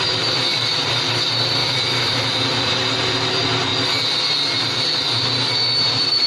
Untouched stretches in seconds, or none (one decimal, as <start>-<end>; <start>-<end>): 3.7-5.8